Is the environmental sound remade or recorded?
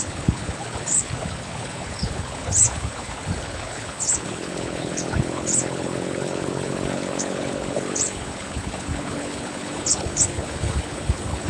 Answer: remade